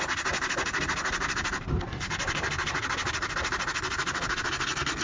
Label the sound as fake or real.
real